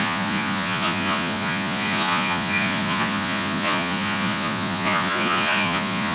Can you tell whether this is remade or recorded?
remade